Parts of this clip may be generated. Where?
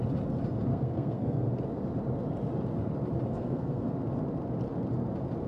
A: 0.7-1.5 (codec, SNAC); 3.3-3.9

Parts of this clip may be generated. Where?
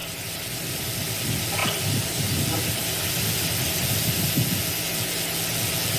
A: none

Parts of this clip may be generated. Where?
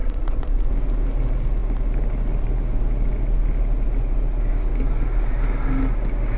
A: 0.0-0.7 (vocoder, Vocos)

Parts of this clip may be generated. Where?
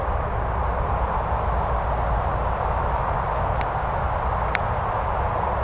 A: none